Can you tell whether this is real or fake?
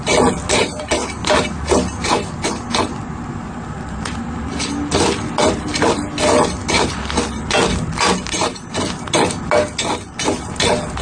real